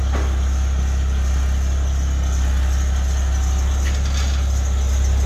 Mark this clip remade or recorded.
recorded